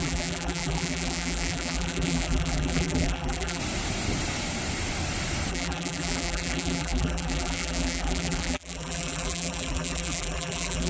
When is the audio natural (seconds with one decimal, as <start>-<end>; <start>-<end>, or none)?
3.6-5.5